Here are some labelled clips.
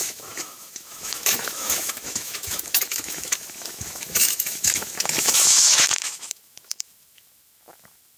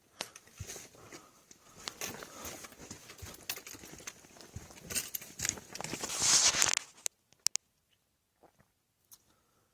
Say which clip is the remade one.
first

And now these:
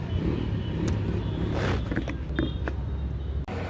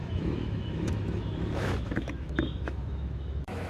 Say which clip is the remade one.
second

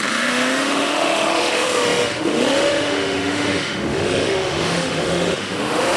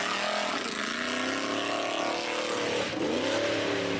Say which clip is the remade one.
first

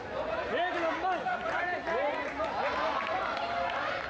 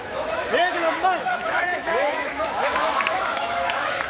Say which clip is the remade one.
second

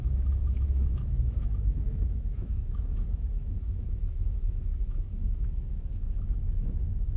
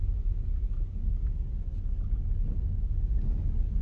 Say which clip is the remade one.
first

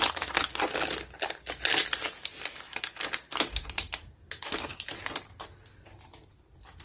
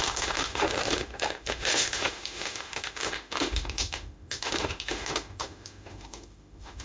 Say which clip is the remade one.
second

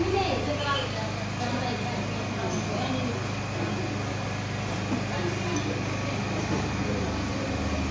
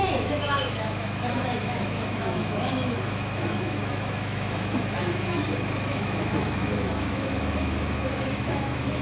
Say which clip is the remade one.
second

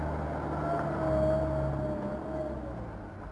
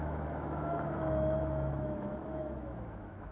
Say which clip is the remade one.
second